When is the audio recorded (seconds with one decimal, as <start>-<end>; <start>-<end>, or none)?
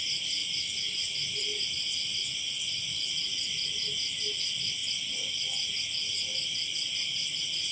0.0-7.7